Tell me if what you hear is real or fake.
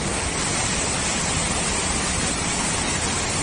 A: real